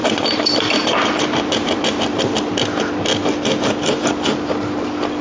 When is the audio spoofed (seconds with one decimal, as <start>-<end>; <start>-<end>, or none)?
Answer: 0.0-2.2

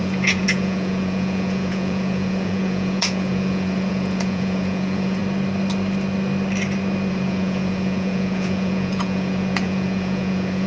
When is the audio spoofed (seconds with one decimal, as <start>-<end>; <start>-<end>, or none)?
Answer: 0.0-5.2; 7.1-10.7

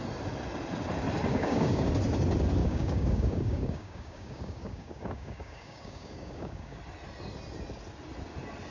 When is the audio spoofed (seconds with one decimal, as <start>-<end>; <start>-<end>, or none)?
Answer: 1.3-1.9; 2.6-6.8

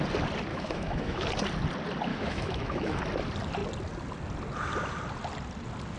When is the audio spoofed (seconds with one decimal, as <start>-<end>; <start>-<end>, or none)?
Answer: 0.5-1.3; 2.1-3.0